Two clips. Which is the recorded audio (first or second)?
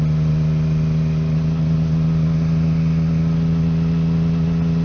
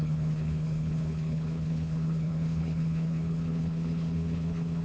first